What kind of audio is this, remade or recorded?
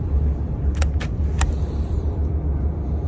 recorded